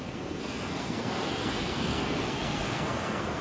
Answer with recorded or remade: remade